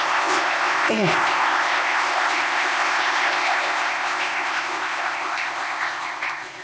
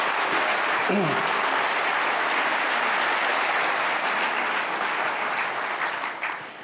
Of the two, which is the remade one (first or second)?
first